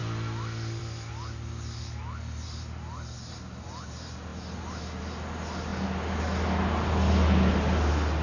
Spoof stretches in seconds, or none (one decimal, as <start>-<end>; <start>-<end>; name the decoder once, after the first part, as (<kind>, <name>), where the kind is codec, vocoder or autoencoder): none